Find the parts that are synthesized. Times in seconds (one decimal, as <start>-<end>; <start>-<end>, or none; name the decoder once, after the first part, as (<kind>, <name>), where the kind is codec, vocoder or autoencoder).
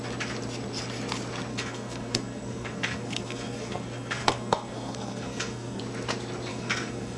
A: 1.5-5.8 (codec, SNAC); 6.5-7.2